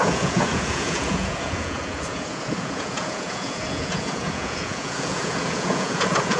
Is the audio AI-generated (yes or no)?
yes